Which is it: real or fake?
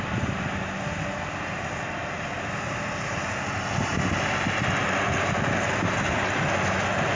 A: real